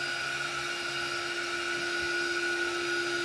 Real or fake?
real